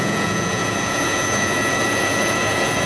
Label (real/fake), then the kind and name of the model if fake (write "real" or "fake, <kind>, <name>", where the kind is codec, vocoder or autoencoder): fake, vocoder, Vocos